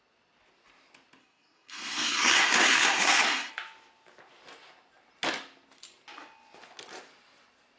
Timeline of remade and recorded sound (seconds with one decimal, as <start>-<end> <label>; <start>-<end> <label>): 0.0-1.2 recorded; 1.2-3.5 remade; 3.5-7.8 recorded